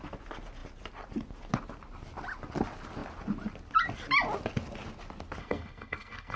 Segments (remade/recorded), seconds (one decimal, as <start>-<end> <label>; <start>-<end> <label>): 0.0-5.4 recorded; 5.4-6.4 remade